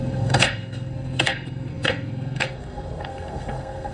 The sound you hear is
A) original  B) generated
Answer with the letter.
B